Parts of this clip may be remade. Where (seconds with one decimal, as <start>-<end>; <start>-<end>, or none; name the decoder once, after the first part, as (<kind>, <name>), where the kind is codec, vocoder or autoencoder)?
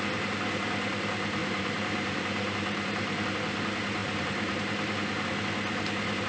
1.4-3.3 (vocoder, BigVGAN v2); 4.0-5.4